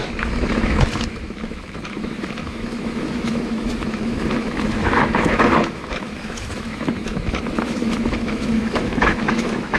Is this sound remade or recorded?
remade